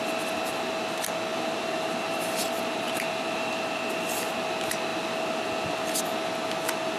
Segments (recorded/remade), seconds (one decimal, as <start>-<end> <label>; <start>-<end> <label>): 0.0-1.3 recorded; 1.3-3.6 remade; 3.6-7.0 recorded